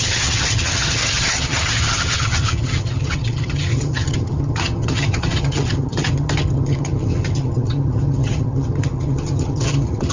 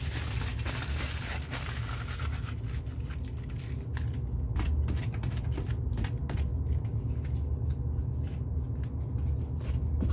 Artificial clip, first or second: first